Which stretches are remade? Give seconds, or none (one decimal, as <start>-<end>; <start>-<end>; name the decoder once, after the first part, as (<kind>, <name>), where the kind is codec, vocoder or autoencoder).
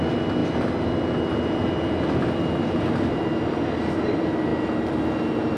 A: none